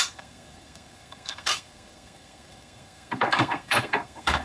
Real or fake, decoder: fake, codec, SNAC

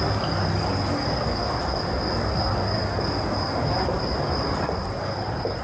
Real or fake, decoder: real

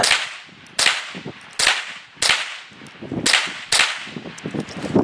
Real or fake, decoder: real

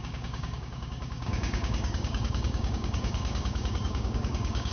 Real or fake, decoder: fake, codec, DAC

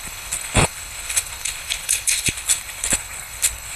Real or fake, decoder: fake, codec, HILCodec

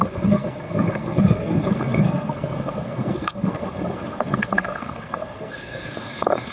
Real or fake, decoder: fake, codec, SNAC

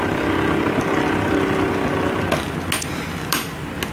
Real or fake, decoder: real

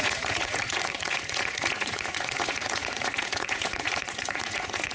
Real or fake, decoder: fake, vocoder, Vocos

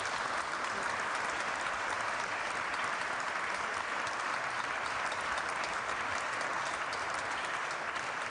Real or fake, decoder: real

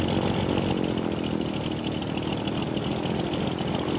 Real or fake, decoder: real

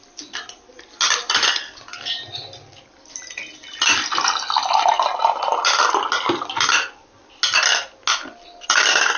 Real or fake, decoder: real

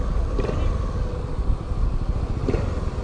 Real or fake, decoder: real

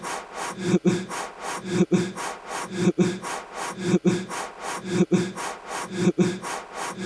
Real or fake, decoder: real